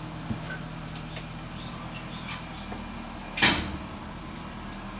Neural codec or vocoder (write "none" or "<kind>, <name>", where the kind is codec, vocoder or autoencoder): none